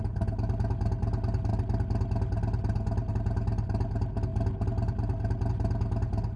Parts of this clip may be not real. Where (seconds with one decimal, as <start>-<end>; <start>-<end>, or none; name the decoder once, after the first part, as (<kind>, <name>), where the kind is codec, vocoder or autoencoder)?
none